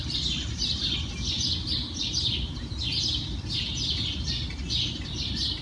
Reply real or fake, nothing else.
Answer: real